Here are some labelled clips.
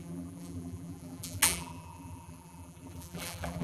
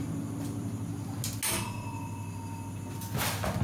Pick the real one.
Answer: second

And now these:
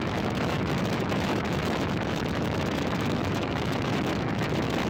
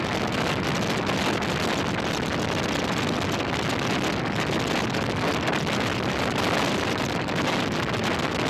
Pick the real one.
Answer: second